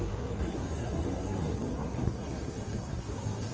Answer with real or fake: fake